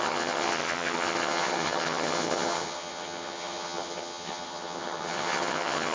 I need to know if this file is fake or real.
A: fake